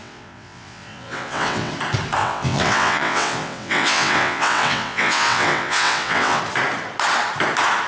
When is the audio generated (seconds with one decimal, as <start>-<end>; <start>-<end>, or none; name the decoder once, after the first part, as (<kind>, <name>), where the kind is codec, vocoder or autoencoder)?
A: 0.0-1.7 (vocoder, WaveNeXt); 2.2-6.4